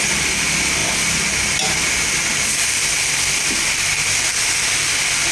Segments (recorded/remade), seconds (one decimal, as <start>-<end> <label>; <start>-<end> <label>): 0.0-5.3 recorded